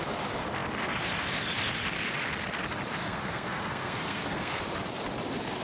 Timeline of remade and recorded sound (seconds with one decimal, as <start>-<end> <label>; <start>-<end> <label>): 0.0-3.0 recorded; 3.0-4.6 remade; 4.6-5.6 recorded